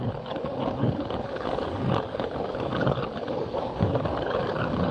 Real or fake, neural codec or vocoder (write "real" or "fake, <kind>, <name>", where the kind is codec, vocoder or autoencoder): fake, codec, DAC